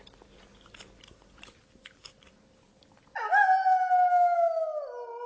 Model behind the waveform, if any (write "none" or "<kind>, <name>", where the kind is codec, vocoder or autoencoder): none